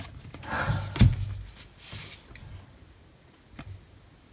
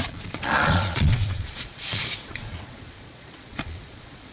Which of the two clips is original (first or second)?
first